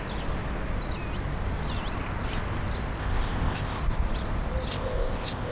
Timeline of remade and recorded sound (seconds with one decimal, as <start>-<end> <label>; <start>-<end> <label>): 0.0-3.0 recorded; 3.0-3.8 remade; 3.8-4.7 recorded; 4.7-5.5 remade

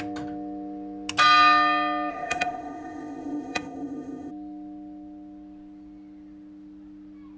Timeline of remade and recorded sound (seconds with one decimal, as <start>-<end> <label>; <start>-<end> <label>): 0.0-2.1 recorded; 2.1-4.3 remade; 4.3-7.4 recorded